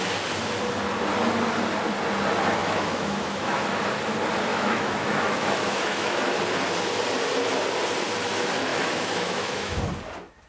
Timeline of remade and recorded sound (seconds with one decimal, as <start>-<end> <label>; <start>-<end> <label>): 0.0-2.6 recorded; 2.6-3.7 remade; 3.7-4.5 recorded; 4.5-6.4 remade; 6.4-8.7 recorded; 8.7-9.8 remade; 9.8-10.5 recorded